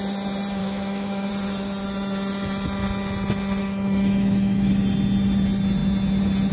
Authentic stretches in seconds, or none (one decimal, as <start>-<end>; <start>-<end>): 0.0-0.6; 1.3-3.6; 4.7-6.5

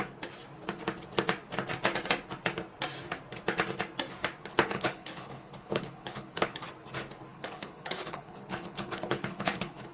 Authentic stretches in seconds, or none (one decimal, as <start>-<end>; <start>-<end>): 0.0-4.4; 6.7-7.3

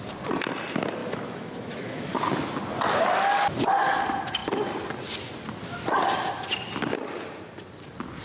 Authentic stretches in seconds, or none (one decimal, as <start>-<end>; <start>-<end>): 0.0-1.0; 2.1-8.2

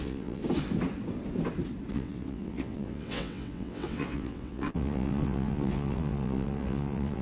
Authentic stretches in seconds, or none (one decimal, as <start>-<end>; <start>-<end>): 0.4-1.9